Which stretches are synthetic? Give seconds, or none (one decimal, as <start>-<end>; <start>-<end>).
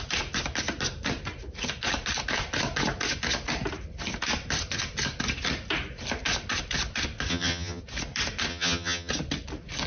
7.3-7.8; 8.5-9.1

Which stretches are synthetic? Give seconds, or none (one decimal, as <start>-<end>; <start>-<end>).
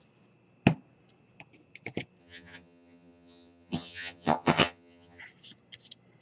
2.2-5.2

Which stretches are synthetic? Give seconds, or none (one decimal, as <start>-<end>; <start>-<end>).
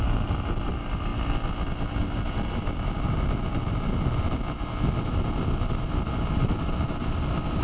none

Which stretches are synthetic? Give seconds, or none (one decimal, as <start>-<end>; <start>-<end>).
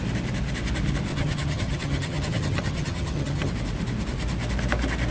1.1-3.5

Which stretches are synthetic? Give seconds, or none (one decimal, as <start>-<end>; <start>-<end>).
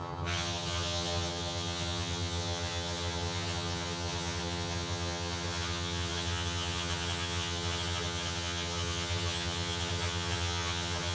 0.0-11.1